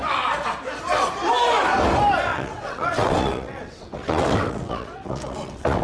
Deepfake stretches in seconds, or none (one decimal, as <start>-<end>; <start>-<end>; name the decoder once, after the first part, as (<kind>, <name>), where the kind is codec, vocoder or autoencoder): 2.3-5.8 (vocoder, WaveNeXt)